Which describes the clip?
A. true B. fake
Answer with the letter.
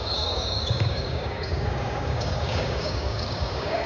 B